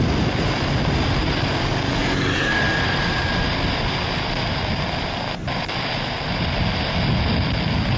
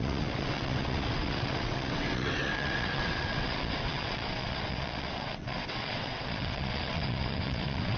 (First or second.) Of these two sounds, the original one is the first